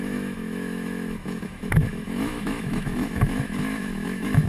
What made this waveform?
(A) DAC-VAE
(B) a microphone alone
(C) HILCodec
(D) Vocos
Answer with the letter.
A